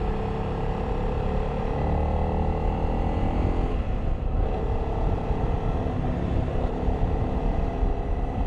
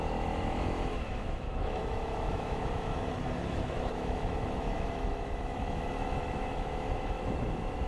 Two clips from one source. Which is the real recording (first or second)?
first